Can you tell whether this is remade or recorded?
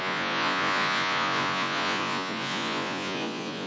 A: remade